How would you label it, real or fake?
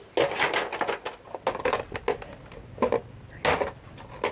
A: real